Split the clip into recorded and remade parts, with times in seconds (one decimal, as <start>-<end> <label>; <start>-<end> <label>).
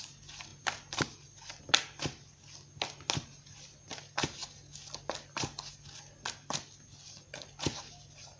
0.0-8.4 recorded